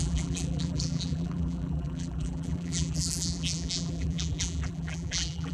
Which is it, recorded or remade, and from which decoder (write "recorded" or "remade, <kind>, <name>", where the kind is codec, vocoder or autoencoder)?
remade, vocoder, BigVGAN v2